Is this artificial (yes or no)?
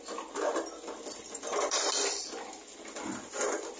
no